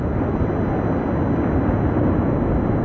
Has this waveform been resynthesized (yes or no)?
no